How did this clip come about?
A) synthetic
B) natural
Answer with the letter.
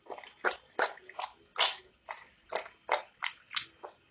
B